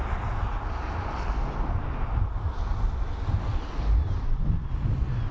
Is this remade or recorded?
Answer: recorded